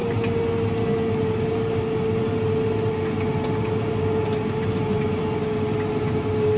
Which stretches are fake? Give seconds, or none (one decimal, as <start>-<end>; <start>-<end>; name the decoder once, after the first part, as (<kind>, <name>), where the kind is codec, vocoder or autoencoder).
none